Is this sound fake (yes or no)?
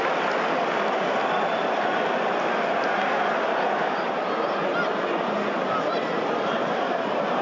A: no